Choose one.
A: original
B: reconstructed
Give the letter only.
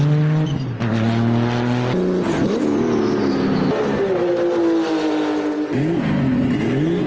A